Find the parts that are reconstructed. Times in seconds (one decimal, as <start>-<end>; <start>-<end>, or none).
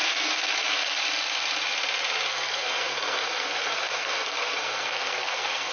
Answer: 0.0-1.0; 2.3-5.7